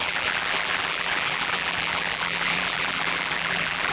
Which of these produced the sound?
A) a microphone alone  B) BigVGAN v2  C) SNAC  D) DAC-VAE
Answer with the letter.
B